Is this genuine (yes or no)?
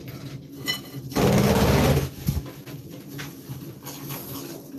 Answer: yes